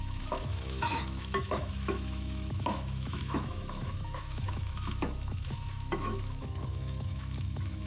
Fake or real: fake